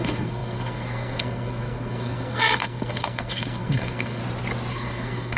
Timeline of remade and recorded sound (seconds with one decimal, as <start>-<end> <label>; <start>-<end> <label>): 0.0-4.2 remade; 4.2-4.7 recorded; 4.7-5.4 remade